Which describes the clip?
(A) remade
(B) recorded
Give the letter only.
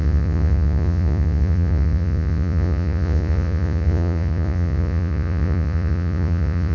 A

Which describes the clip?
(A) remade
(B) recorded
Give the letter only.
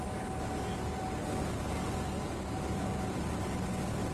B